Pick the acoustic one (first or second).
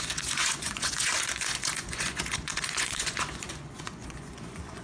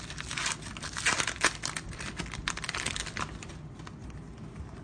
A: second